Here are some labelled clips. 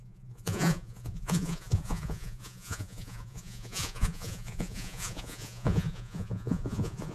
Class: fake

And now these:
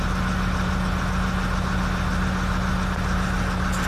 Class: real